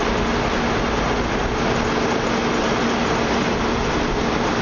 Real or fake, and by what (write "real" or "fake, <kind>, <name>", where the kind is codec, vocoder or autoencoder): real